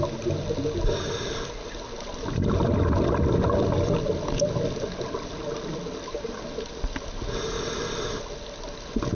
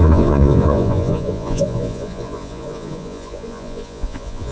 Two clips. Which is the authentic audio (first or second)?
first